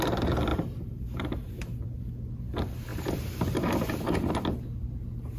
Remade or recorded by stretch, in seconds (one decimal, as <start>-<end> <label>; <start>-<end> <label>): 0.0-0.5 recorded; 0.5-1.5 remade; 1.5-2.9 recorded; 2.9-4.3 remade; 4.3-5.4 recorded

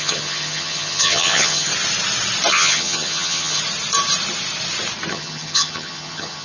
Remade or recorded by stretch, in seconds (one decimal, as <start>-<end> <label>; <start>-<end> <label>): 0.0-1.7 remade; 1.7-2.5 recorded; 2.5-3.6 remade; 3.6-5.1 recorded; 5.1-6.4 remade

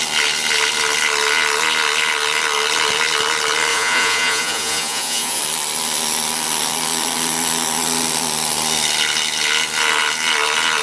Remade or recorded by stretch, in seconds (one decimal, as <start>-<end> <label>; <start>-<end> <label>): 0.0-3.7 recorded; 3.7-5.4 remade; 5.4-10.8 recorded

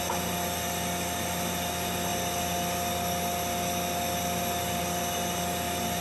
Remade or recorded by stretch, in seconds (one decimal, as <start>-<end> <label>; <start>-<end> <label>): 0.0-6.0 recorded

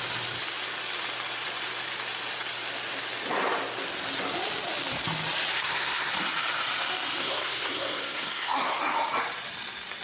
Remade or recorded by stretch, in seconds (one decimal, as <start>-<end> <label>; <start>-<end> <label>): 0.0-5.5 recorded; 5.5-6.1 remade; 6.1-7.2 recorded; 7.2-8.8 remade; 8.8-10.0 recorded